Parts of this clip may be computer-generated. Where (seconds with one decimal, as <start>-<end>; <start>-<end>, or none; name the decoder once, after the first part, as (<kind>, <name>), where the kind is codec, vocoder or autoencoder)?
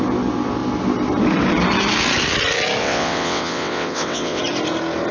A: 2.8-4.4 (vocoder, WaveNeXt)